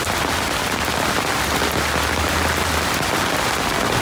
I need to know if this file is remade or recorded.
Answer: recorded